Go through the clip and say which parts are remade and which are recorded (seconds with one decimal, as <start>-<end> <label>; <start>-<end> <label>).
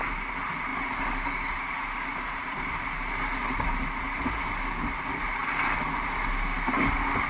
0.0-7.3 recorded